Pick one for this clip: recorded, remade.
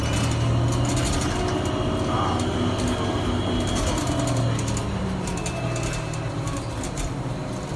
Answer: recorded